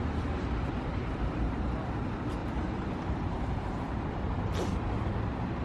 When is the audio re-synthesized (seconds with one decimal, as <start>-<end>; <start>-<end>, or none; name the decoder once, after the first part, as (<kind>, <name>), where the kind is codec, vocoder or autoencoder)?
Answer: 0.9-1.9 (vocoder, BigVGAN v2); 2.4-4.0